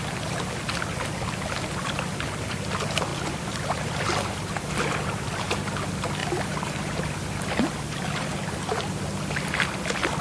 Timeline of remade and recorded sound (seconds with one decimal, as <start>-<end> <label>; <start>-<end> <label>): 0.0-3.1 recorded; 3.1-4.7 remade; 4.7-6.2 recorded; 6.2-8.3 remade; 8.3-10.2 recorded